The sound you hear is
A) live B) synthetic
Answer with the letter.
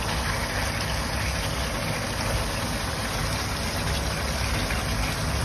A